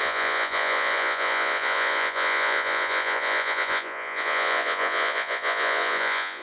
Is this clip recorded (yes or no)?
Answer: no